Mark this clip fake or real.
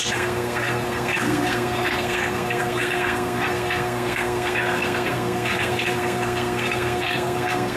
fake